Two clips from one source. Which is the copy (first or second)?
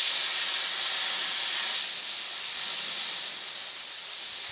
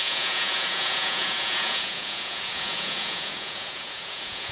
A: second